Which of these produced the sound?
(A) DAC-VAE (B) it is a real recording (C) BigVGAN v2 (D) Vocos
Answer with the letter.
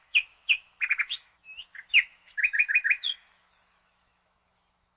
A